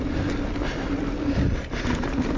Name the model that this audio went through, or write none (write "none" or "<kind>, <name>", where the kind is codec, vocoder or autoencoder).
none